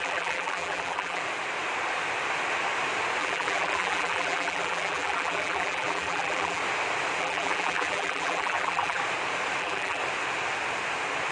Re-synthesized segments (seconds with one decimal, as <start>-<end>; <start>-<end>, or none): 0.0-1.2; 3.2-6.6; 7.2-9.0; 9.6-10.0